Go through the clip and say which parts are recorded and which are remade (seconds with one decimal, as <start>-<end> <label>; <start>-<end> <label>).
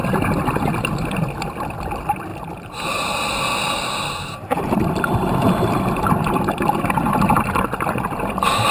0.0-8.7 recorded